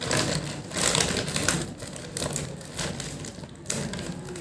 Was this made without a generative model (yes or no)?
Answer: yes